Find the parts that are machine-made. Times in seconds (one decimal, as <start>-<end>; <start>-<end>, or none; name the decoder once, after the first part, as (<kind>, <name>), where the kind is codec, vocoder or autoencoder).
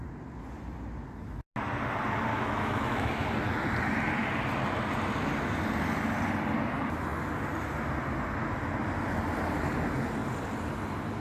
2.3-3.1 (autoencoder, DAC-VAE)